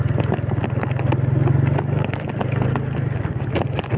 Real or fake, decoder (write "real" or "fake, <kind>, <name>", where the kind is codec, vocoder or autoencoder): real